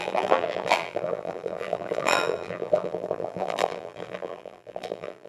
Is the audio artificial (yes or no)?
yes